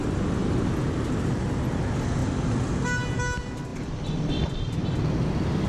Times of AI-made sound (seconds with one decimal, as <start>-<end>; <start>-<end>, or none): 0.4-1.2; 2.2-2.7